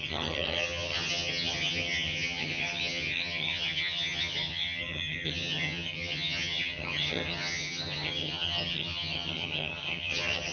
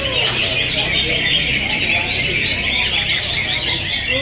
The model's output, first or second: first